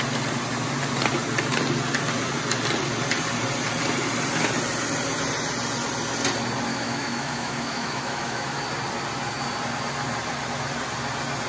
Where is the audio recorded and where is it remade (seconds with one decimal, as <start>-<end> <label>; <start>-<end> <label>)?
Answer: 0.0-6.7 recorded; 6.7-8.6 remade; 8.6-11.5 recorded